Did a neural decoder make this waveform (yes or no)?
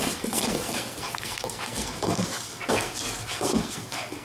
yes